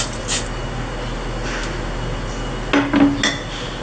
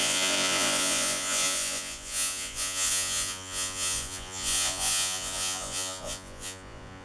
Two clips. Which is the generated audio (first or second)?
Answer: second